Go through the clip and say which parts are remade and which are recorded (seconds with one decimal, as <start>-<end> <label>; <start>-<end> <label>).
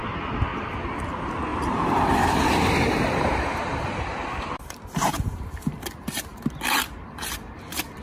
0.0-1.5 recorded; 1.5-5.5 remade; 5.5-8.0 recorded